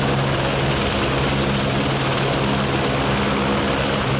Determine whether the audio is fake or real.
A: real